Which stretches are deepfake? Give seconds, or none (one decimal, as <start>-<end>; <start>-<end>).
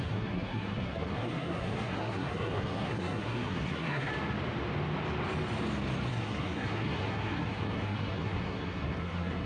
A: 0.0-4.1; 6.1-9.5